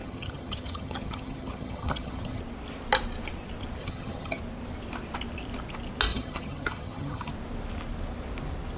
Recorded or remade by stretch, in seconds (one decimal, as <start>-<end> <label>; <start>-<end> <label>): 0.0-2.4 remade; 2.4-3.8 recorded; 3.8-4.4 remade; 4.4-6.1 recorded; 6.1-7.3 remade; 7.3-8.8 recorded